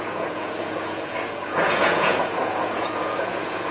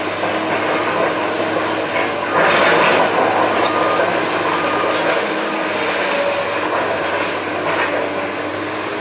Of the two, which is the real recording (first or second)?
second